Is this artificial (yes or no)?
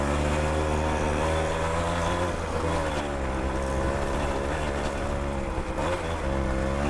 no